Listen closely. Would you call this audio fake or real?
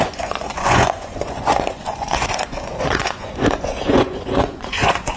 fake